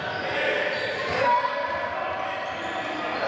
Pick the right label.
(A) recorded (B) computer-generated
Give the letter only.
A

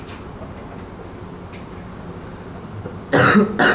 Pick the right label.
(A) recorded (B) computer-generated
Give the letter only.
A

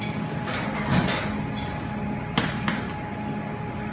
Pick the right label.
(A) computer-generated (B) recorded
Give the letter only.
B